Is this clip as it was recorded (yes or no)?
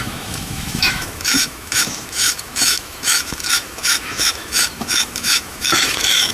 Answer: no